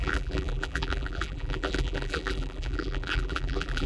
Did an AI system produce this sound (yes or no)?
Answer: yes